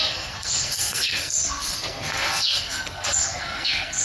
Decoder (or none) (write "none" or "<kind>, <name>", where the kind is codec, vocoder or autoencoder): codec, SNAC